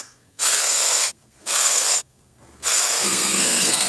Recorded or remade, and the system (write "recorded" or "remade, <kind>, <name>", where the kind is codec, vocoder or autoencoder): remade, codec, SNAC